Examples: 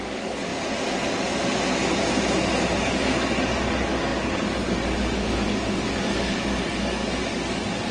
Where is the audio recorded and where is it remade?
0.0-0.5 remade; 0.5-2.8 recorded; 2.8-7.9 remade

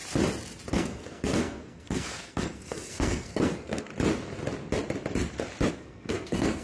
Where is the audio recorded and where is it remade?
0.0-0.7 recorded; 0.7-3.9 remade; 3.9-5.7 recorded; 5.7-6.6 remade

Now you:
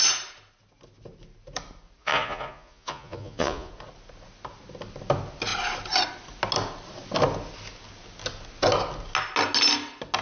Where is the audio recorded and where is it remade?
0.0-2.0 recorded; 2.0-3.7 remade; 3.7-10.2 recorded

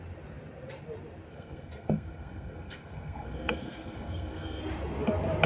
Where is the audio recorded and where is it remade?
0.0-1.3 recorded; 1.3-4.6 remade; 4.6-5.5 recorded

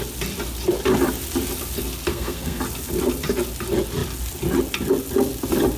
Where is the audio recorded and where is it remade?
0.0-2.1 recorded; 2.1-2.6 remade; 2.6-5.8 recorded

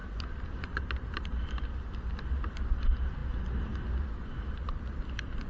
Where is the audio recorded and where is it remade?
0.0-5.5 recorded

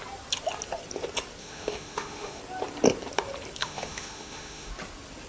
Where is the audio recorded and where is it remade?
0.0-1.4 recorded; 1.4-2.4 remade; 2.4-3.6 recorded; 3.6-4.7 remade; 4.7-5.3 recorded